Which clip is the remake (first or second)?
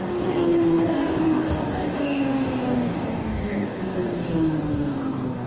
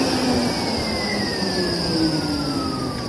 first